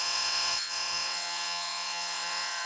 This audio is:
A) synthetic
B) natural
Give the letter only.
A